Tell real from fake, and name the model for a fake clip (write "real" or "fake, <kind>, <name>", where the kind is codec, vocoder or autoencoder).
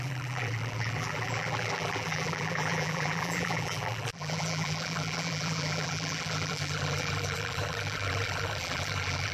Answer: fake, vocoder, BigVGAN v2